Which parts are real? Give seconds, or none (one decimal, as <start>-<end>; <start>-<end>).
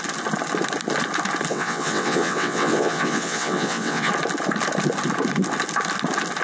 0.0-1.5; 4.1-6.4